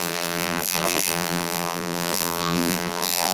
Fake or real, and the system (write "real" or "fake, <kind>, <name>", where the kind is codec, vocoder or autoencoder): fake, vocoder, BigVGAN v2